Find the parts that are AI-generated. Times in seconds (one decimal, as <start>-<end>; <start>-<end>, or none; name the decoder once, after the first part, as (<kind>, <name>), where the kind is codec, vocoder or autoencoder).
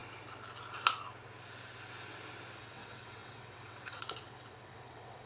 2.6-5.3 (vocoder, WaveNeXt)